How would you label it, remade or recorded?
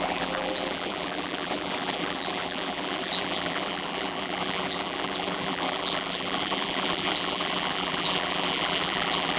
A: remade